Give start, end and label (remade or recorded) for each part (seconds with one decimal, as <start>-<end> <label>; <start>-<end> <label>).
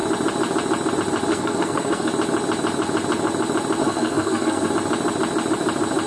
0.0-1.3 recorded; 1.3-2.1 remade; 2.1-3.8 recorded; 3.8-4.7 remade; 4.7-6.1 recorded